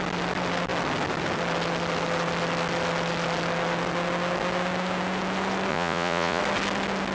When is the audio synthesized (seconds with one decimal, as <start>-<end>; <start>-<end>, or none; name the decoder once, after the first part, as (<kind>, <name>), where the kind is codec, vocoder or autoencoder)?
5.7-6.4 (vocoder, Vocos)